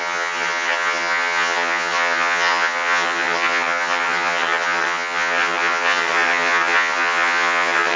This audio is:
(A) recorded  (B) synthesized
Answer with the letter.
B